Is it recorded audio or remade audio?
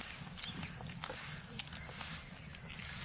recorded